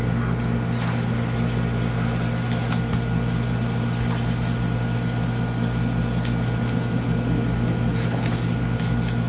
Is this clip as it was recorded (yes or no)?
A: yes